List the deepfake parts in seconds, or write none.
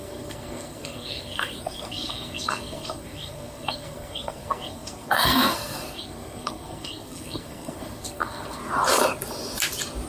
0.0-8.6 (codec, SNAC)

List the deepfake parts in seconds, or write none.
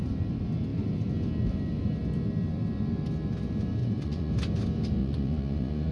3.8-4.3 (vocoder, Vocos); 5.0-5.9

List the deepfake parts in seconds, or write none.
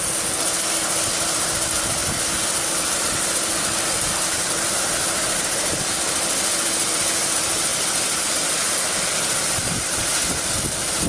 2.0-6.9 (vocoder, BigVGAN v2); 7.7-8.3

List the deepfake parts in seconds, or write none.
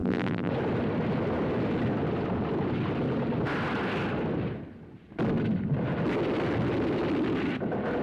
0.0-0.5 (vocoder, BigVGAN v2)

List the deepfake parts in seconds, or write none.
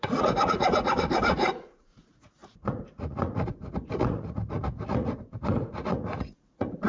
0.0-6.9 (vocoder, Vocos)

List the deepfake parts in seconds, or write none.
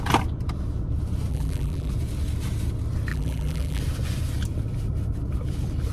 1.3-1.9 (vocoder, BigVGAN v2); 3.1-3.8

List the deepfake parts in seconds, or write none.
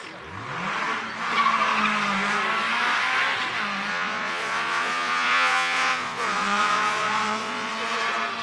3.9-7.7 (vocoder, Vocos)